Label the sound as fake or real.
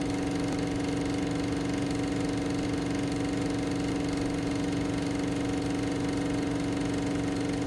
real